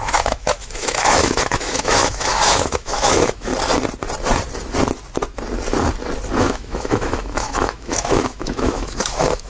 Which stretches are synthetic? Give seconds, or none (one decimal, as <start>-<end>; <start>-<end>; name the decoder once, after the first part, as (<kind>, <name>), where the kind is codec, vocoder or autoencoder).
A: 0.0-3.5 (autoencoder, DAC-VAE); 6.4-9.5